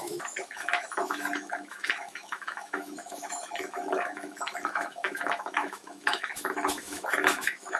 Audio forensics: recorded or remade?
remade